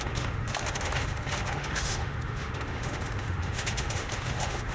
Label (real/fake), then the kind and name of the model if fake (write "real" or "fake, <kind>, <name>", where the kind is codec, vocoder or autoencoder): fake, autoencoder, DAC-VAE